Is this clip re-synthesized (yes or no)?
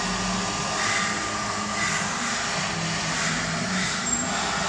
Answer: no